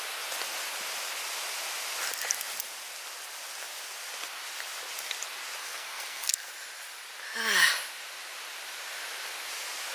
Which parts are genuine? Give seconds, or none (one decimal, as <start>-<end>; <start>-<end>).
0.0-5.6; 6.5-9.9